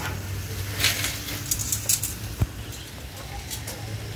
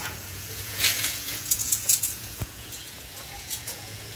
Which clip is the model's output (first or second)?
second